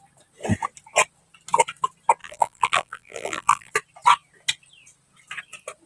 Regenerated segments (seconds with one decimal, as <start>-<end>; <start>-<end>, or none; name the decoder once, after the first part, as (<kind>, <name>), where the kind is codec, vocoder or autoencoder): 2.2-3.7 (vocoder, BigVGAN v2)